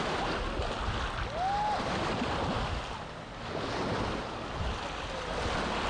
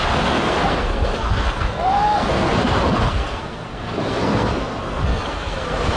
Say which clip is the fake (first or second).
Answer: second